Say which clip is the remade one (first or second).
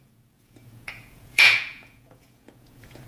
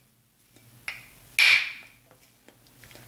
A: first